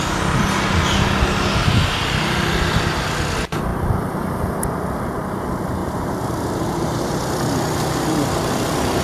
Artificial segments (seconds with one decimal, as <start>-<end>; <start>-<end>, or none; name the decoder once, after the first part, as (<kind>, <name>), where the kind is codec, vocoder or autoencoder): 5.8-7.2 (vocoder, BigVGAN v2)